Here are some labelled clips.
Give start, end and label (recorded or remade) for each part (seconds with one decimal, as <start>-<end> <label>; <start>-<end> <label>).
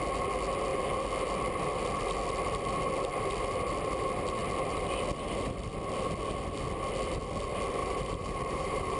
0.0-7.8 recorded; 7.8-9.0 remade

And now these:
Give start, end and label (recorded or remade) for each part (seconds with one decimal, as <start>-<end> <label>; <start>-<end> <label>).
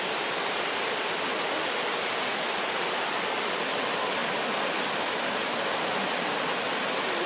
0.0-7.3 recorded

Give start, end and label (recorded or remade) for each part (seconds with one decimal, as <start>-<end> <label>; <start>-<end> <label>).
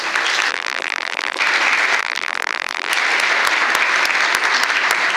0.0-0.5 recorded; 0.5-1.4 remade; 1.4-2.0 recorded; 2.0-2.9 remade; 2.9-5.2 recorded